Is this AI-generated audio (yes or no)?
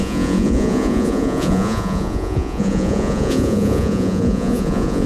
yes